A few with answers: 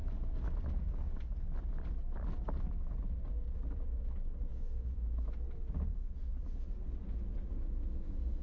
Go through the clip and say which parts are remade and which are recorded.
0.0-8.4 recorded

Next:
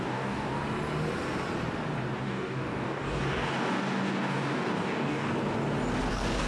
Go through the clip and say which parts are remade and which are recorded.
0.0-0.5 remade; 0.5-2.2 recorded; 2.2-5.3 remade; 5.3-6.1 recorded; 6.1-6.5 remade

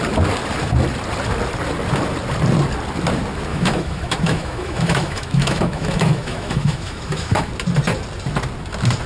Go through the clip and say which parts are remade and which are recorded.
0.0-3.5 recorded; 3.5-7.5 remade; 7.5-9.1 recorded

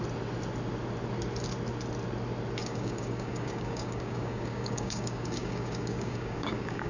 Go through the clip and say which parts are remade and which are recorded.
0.0-2.6 recorded; 2.6-6.9 remade

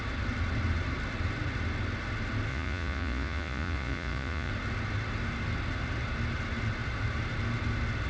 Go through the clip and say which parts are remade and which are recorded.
0.0-2.5 recorded; 2.5-4.5 remade; 4.5-8.1 recorded

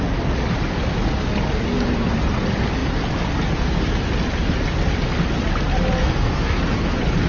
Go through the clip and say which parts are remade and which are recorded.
0.0-6.0 recorded; 6.0-6.6 remade; 6.6-7.3 recorded

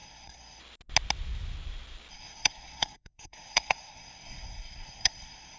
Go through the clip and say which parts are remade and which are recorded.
0.0-0.6 remade; 0.6-2.1 recorded; 2.1-5.6 remade